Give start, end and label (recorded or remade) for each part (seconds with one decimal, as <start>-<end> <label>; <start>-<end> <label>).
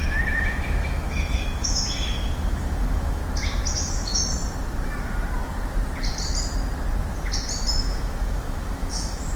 0.0-3.2 remade; 3.2-3.7 recorded; 3.7-4.2 remade; 4.2-7.8 recorded; 7.8-9.4 remade